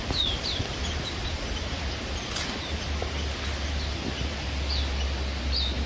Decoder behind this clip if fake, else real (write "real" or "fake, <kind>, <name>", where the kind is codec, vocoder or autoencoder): real